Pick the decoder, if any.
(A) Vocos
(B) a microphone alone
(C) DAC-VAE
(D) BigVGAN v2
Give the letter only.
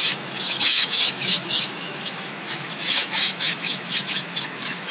C